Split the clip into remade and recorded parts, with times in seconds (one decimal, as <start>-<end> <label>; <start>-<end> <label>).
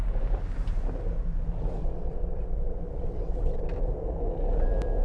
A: 0.0-1.8 recorded; 1.8-3.7 remade; 3.7-5.0 recorded